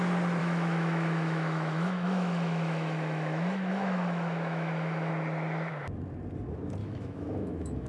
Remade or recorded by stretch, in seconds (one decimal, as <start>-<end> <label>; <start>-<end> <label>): 0.0-0.4 recorded; 0.4-5.1 remade; 5.1-6.8 recorded; 6.8-7.9 remade